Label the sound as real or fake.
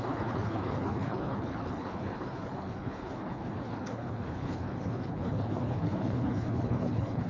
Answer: fake